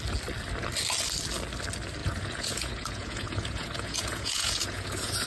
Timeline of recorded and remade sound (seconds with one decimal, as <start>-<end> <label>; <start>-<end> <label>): 0.0-2.0 recorded; 2.0-5.3 remade